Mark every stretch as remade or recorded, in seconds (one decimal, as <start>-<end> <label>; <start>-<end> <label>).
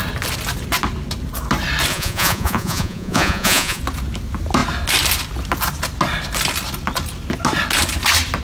0.0-1.9 recorded; 1.9-3.8 remade; 3.8-8.4 recorded